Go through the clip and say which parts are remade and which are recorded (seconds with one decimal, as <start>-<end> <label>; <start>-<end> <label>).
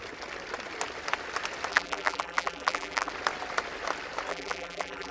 0.0-1.7 recorded; 1.7-3.1 remade; 3.1-4.3 recorded; 4.3-5.1 remade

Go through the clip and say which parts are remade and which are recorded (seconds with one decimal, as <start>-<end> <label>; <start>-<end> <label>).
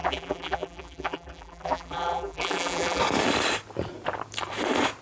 0.0-3.0 remade; 3.0-5.0 recorded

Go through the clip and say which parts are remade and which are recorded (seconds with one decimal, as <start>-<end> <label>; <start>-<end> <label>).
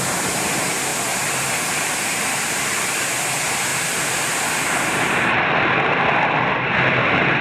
0.0-0.9 recorded; 0.9-3.1 remade; 3.1-3.7 recorded; 3.7-7.4 remade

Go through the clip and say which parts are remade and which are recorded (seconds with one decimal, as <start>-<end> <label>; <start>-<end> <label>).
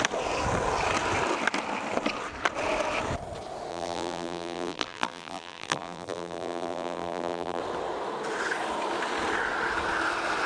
0.0-3.7 recorded; 3.7-7.6 remade; 7.6-10.5 recorded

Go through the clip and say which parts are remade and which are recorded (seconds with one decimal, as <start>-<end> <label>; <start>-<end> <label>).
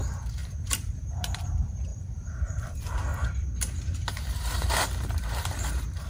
0.0-3.1 remade; 3.1-3.6 recorded; 3.6-6.1 remade